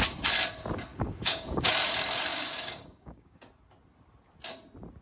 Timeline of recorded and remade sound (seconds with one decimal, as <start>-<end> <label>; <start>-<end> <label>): 0.0-0.9 recorded; 0.9-1.7 remade; 1.7-2.3 recorded; 2.3-3.5 remade; 3.5-5.0 recorded